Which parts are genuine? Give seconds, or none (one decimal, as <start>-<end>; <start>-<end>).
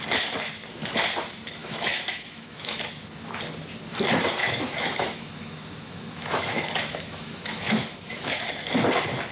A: 0.0-1.6; 2.9-4.4; 8.4-9.3